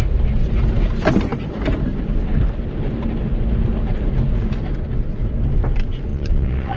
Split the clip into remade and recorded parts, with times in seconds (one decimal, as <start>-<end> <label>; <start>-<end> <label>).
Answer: 0.0-6.1 recorded; 6.1-6.8 remade